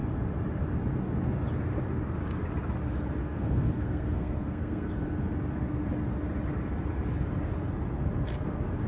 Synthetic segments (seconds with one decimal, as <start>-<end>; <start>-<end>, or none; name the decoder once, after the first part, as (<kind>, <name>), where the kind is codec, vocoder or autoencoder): 3.2-4.9 (codec, SNAC)